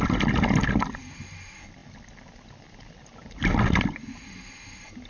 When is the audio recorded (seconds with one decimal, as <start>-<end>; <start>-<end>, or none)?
0.0-5.1